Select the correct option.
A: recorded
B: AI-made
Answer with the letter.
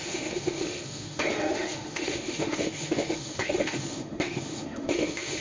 B